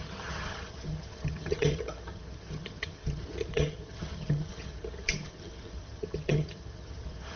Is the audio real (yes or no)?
no